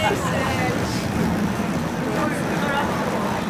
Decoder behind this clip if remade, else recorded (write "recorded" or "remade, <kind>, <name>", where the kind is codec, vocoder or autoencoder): recorded